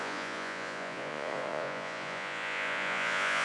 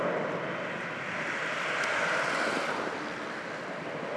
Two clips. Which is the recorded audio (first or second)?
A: second